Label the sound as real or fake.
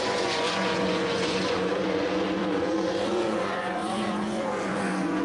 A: fake